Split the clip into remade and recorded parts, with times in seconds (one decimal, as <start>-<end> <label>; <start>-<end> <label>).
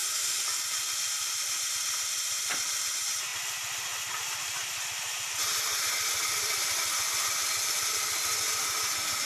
0.0-9.3 recorded